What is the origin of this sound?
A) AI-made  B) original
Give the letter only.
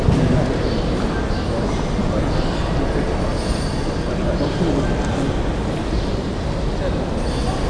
B